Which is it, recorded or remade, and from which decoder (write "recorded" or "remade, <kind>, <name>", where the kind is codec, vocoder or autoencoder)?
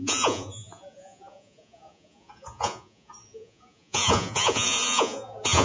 remade, vocoder, Vocos